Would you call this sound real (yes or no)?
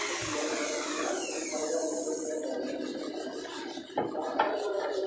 yes